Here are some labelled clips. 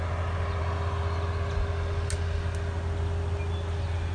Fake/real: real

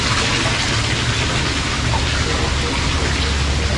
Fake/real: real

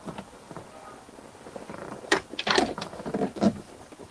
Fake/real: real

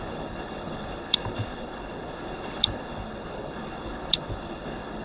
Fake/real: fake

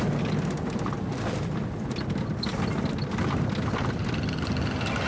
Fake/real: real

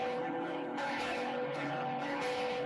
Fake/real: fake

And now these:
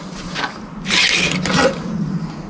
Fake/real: real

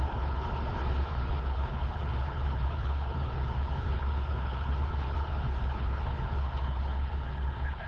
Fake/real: fake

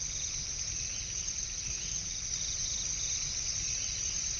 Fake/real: real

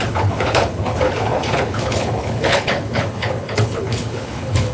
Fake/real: fake